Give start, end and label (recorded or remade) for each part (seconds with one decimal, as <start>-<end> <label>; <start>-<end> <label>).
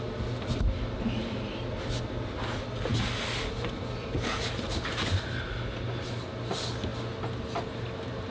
0.0-8.3 recorded